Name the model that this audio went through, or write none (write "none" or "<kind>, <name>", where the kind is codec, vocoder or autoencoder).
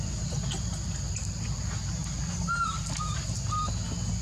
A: none